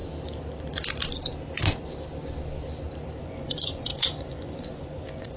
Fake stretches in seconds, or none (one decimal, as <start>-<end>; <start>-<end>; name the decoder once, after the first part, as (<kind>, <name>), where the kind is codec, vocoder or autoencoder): 3.2-5.4 (vocoder, Vocos)